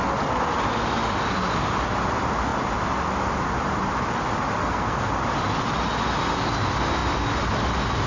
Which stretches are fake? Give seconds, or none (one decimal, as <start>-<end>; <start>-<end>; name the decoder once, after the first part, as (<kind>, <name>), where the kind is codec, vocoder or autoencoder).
4.6-5.1 (codec, SNAC)